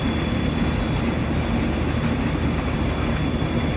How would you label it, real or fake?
real